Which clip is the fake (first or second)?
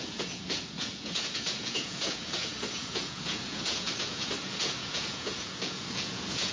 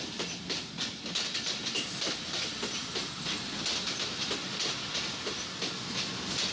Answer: first